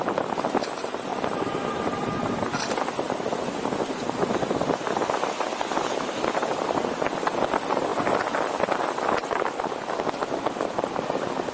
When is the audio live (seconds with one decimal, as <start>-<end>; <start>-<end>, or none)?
0.0-11.5